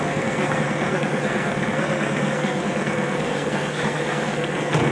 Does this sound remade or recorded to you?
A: remade